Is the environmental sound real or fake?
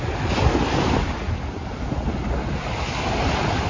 real